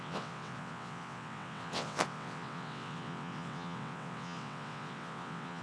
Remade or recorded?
remade